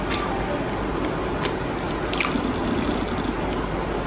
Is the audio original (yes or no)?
yes